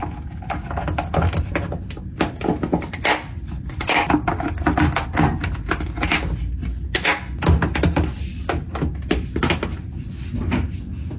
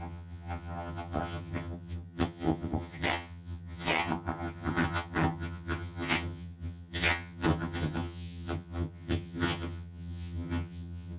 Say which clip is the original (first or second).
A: first